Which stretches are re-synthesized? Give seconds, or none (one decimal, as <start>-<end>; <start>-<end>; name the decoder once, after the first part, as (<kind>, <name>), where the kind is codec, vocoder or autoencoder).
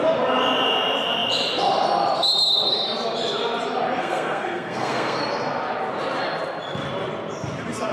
4.0-5.2 (codec, SNAC)